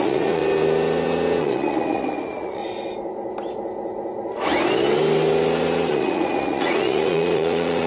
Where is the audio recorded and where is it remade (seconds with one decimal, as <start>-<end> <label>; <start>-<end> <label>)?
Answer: 0.0-0.4 remade; 0.4-1.4 recorded; 1.4-2.6 remade; 2.6-5.9 recorded; 5.9-7.9 remade